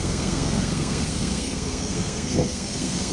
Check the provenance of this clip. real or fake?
fake